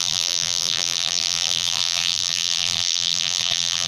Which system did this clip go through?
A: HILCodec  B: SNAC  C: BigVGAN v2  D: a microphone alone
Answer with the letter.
C